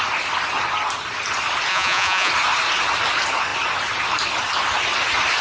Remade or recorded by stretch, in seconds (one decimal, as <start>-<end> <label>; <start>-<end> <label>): 0.0-1.7 recorded; 1.7-2.3 remade; 2.3-5.4 recorded